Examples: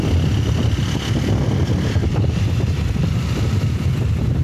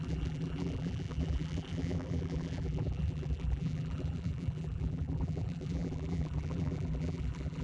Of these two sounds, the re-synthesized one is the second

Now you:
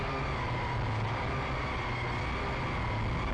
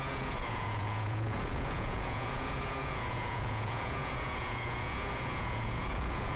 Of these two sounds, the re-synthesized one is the second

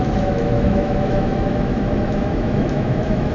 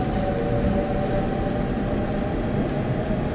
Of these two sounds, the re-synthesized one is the first